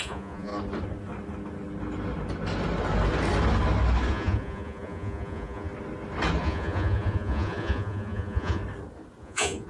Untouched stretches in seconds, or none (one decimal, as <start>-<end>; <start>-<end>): 0.5-4.1; 5.7-6.4; 8.6-9.2